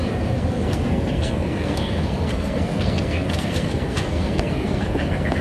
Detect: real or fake fake